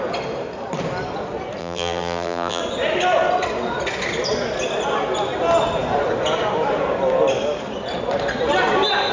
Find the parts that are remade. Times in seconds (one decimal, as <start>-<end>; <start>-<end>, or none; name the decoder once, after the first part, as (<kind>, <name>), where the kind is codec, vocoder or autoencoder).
1.6-2.6 (vocoder, BigVGAN v2)